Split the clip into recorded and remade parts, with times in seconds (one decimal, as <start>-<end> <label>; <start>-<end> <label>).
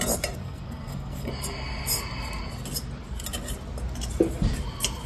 0.0-0.4 recorded; 0.4-1.3 remade; 1.3-5.1 recorded